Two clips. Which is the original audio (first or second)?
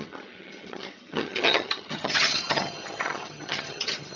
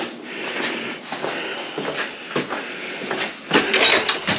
second